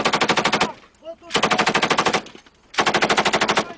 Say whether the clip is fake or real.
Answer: real